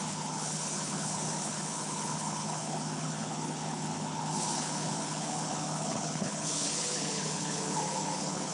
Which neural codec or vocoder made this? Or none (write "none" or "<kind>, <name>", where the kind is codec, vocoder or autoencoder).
codec, HILCodec